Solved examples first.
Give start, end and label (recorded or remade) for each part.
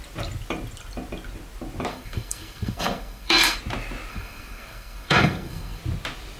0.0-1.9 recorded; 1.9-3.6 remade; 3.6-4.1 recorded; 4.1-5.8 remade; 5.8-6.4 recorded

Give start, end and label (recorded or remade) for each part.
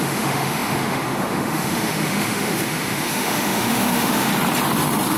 0.0-4.3 remade; 4.3-5.2 recorded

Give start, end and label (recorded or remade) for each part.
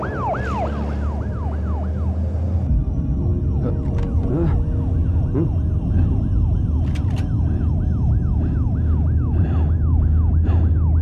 0.0-11.0 recorded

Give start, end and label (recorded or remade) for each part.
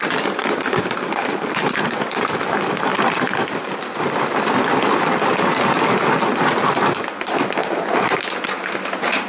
0.0-9.3 recorded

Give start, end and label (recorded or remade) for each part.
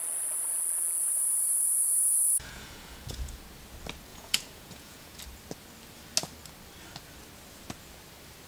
0.0-1.0 recorded; 1.0-3.4 remade; 3.4-4.1 recorded; 4.1-5.2 remade; 5.2-8.5 recorded